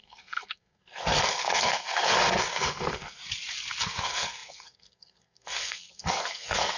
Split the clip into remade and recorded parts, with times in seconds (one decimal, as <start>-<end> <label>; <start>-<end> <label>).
0.0-3.2 remade; 3.2-3.8 recorded; 3.8-6.8 remade